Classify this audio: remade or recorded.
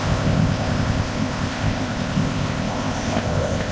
remade